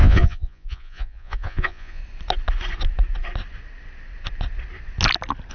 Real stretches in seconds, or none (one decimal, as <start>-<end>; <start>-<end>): 2.0-5.5